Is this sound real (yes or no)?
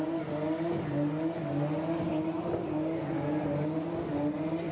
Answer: yes